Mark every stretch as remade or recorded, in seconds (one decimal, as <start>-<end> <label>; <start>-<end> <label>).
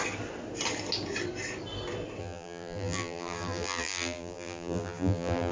0.0-2.2 recorded; 2.2-5.5 remade